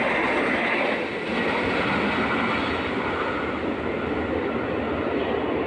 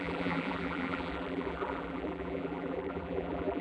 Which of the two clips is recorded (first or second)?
first